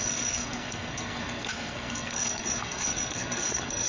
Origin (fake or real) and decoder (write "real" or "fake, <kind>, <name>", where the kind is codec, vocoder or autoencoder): fake, codec, SNAC